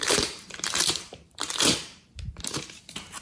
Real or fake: fake